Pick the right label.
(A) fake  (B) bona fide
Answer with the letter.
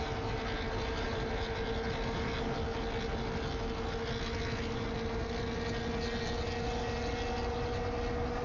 B